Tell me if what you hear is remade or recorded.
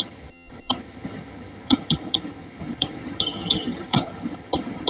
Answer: remade